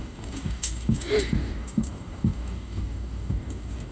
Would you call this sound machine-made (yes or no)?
yes